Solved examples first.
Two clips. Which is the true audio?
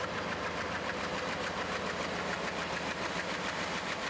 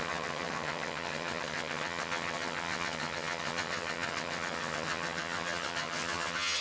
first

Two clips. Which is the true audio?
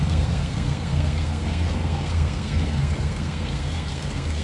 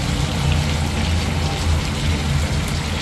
second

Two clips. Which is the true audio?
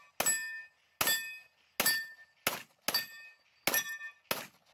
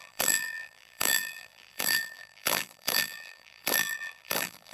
first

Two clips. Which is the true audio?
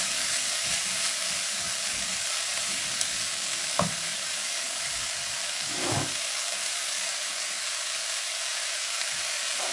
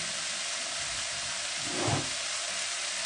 second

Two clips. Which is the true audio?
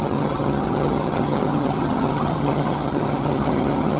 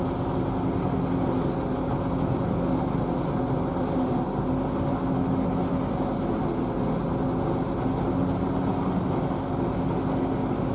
second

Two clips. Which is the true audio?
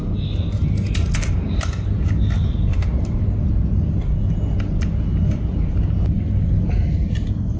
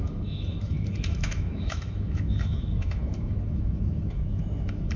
first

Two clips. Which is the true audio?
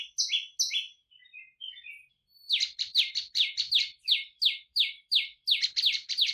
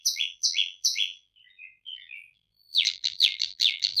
first